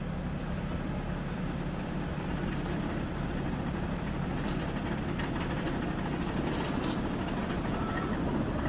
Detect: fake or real fake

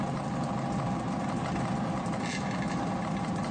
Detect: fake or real real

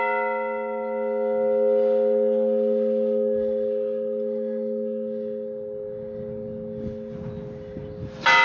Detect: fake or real real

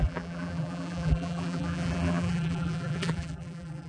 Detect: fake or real fake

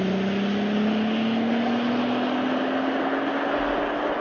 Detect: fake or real real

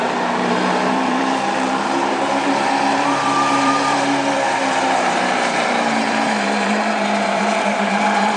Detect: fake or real fake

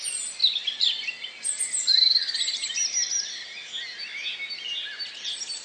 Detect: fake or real real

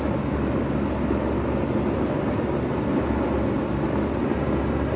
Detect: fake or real real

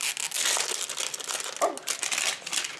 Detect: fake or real real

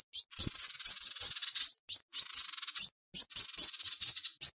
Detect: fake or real real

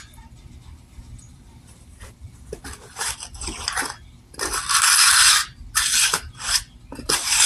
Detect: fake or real real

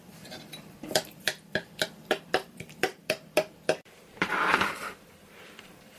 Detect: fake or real fake